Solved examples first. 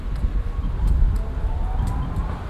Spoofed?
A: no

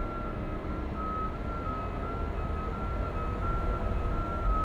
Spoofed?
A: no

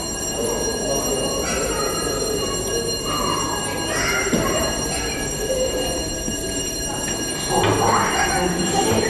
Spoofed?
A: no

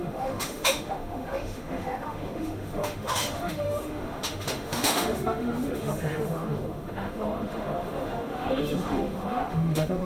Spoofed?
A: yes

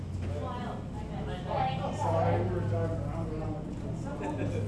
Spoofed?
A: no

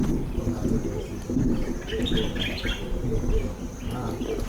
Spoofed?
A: no